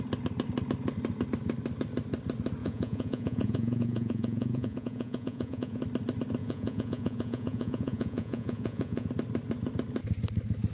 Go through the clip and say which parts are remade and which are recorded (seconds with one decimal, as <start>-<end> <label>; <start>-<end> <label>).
0.0-2.6 recorded; 2.6-5.8 remade; 5.8-6.4 recorded; 6.4-9.1 remade; 9.1-10.7 recorded